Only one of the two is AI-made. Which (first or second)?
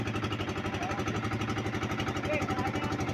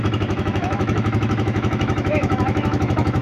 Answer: second